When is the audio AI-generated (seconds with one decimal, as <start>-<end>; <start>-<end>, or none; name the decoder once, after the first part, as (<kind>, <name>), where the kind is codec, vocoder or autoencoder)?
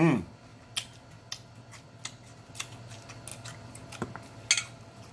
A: none